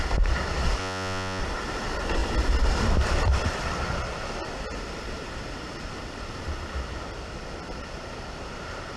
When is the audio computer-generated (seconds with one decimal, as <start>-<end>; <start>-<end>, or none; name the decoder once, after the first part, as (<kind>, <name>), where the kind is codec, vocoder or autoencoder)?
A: 0.8-1.4 (vocoder, Vocos)